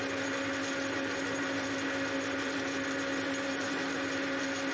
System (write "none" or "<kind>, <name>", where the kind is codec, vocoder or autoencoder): none